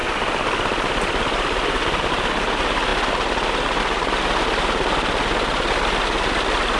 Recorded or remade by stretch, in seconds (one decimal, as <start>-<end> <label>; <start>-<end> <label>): 0.0-6.8 recorded